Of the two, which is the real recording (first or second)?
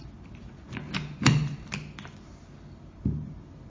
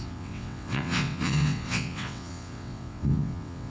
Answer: first